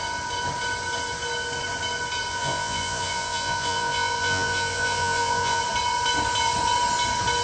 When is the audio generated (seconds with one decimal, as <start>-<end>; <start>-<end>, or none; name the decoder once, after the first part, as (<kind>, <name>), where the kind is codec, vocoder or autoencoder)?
2.3-5.6 (vocoder, Vocos)